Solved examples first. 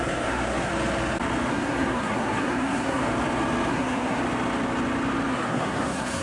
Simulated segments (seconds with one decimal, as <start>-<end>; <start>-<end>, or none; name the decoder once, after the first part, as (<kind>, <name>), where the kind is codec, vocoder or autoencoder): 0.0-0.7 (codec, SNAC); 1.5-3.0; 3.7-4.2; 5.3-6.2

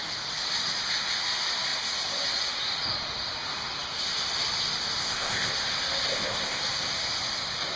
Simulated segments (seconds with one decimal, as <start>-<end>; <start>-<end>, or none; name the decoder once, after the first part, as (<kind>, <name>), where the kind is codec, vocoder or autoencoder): 5.0-5.5 (codec, ZipCodec); 6.1-6.6

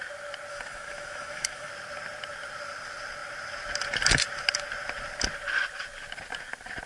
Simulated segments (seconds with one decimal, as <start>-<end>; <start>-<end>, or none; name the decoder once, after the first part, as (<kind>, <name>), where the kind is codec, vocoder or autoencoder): 0.5-1.7 (autoencoder, DAC-VAE)